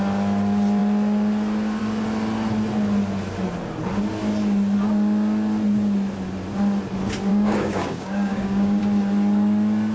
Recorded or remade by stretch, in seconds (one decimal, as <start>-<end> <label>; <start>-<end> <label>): 0.0-7.3 recorded; 7.3-8.8 remade; 8.8-9.9 recorded